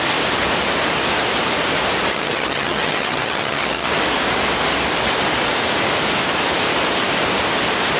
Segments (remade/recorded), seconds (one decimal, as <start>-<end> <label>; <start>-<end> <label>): 0.0-2.1 recorded; 2.1-3.9 remade; 3.9-8.0 recorded